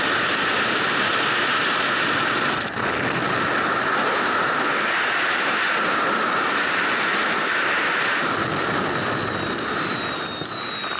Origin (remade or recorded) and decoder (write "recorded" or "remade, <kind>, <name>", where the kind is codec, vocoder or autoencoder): recorded